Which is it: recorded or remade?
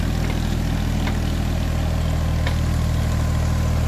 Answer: recorded